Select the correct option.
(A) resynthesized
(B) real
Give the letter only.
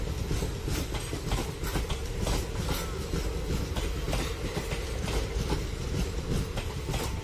B